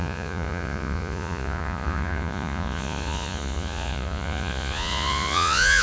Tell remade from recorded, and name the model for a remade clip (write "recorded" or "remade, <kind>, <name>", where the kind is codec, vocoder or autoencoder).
remade, vocoder, Vocos